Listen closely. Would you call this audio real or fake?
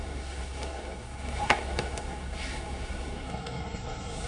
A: fake